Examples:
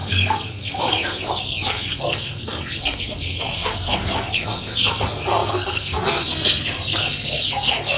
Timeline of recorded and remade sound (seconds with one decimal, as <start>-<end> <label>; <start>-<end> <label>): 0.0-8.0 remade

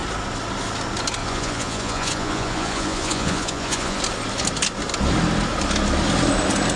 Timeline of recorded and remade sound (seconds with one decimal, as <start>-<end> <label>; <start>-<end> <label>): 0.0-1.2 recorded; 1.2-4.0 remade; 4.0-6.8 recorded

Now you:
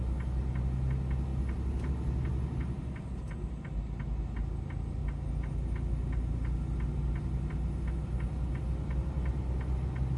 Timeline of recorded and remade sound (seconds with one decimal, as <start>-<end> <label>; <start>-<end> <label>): 0.0-10.2 recorded